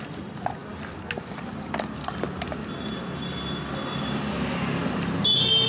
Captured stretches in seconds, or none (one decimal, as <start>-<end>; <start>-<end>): 0.0-5.7